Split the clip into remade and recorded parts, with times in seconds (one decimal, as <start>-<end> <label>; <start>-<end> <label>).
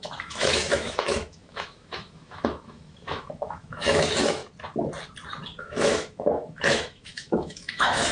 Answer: 0.0-4.4 remade; 4.4-5.6 recorded; 5.6-8.1 remade